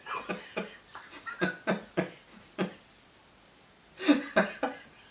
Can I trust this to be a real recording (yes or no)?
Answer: yes